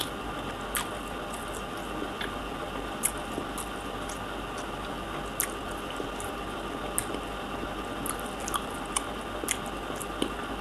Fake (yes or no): no